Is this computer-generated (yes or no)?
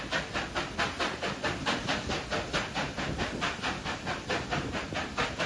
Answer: no